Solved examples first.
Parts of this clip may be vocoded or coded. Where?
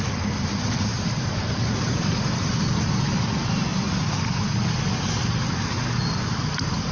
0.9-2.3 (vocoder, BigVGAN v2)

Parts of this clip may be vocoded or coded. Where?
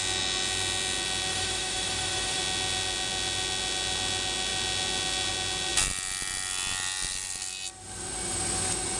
1.3-2.4 (autoencoder, DAC-VAE)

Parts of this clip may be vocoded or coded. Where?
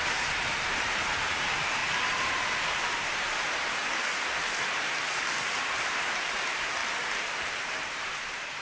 0.0-3.8 (vocoder, BigVGAN v2); 5.5-6.8; 7.4-8.6